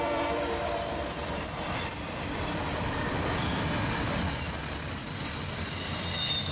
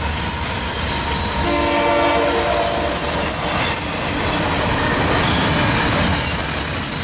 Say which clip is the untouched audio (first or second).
second